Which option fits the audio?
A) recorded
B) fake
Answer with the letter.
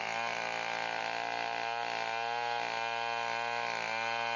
A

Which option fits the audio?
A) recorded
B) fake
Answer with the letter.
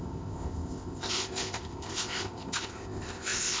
B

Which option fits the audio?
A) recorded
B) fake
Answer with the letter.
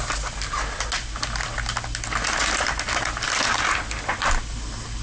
A